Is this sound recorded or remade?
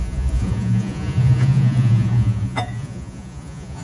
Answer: remade